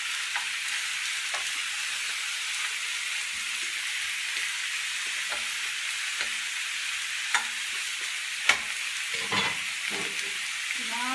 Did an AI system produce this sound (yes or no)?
no